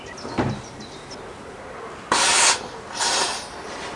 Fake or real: real